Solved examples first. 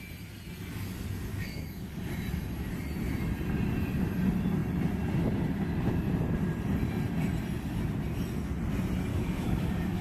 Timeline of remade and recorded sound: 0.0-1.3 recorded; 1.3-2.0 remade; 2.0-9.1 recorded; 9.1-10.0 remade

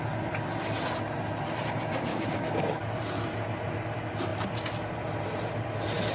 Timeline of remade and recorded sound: 0.0-2.1 recorded; 2.1-2.8 remade; 2.8-6.1 recorded

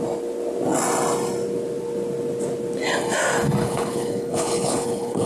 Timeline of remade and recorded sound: 0.0-3.6 recorded; 3.6-5.3 remade

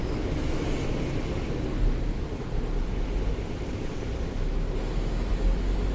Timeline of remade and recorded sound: 0.0-0.7 remade; 0.7-4.3 recorded; 4.3-5.3 remade; 5.3-5.9 recorded

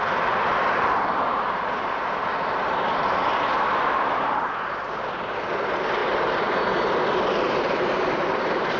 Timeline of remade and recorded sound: 0.0-6.0 remade; 6.0-7.3 recorded; 7.3-8.8 remade

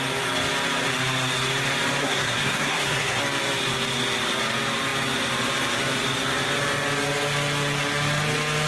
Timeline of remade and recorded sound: 0.0-2.0 recorded; 2.0-3.2 remade; 3.2-8.7 recorded

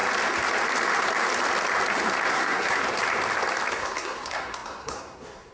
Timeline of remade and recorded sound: 0.0-2.3 recorded; 2.3-2.8 remade; 2.8-3.7 recorded; 3.7-5.5 remade

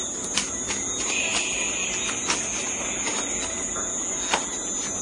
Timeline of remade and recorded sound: 0.0-5.0 recorded